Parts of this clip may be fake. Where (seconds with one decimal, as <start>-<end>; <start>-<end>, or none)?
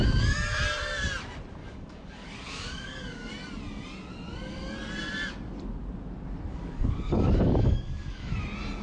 1.6-3.3; 6.5-8.3